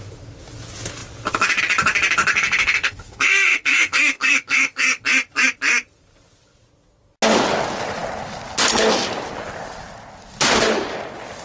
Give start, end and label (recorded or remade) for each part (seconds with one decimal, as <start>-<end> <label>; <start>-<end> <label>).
0.0-2.3 recorded; 2.3-5.0 remade; 5.0-11.4 recorded